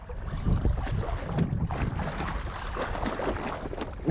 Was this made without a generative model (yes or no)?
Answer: yes